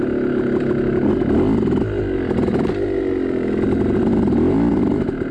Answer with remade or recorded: recorded